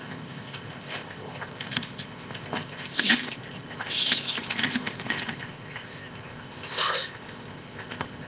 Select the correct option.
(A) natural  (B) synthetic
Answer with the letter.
B